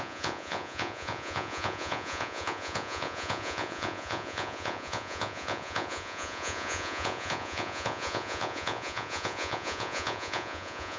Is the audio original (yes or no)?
no